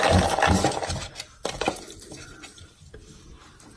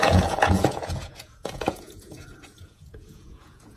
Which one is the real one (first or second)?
first